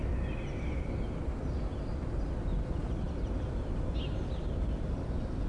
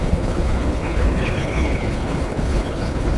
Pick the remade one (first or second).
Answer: second